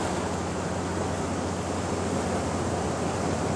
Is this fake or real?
real